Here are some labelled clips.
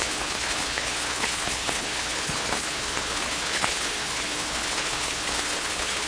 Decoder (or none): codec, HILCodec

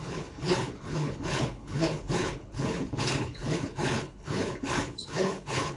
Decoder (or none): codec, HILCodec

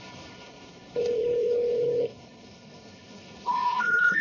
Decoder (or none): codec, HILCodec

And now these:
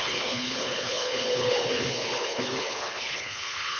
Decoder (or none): codec, HILCodec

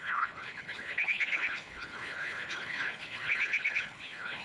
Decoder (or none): codec, HILCodec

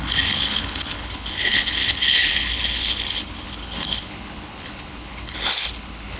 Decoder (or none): codec, HILCodec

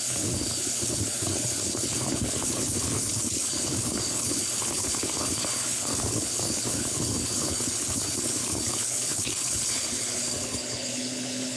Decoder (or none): codec, HILCodec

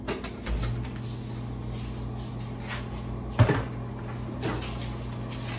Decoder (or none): none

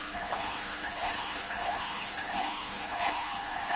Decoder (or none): codec, HILCodec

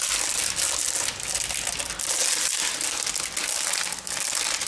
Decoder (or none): none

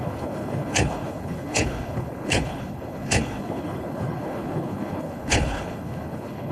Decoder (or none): codec, HILCodec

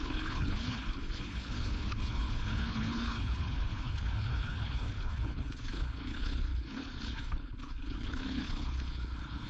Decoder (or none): codec, HILCodec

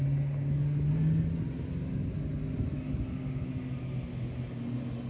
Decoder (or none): none